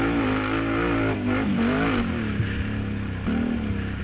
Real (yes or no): yes